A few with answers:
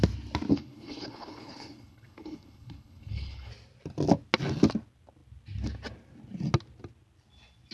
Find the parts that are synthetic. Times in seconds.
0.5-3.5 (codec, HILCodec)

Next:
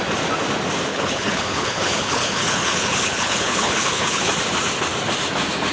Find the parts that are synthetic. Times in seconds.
0.9-4.3 (codec, HILCodec)

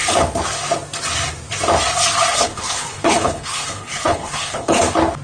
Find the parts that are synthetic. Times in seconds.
2.3-4.8 (codec, HILCodec)

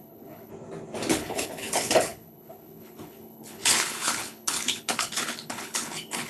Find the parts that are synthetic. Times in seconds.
0.0-0.5 (codec, HILCodec); 1.1-6.3

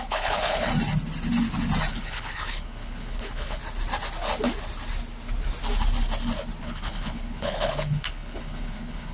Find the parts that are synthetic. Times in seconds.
0.0-0.7 (codec, HILCodec); 1.9-3.6; 6.6-9.1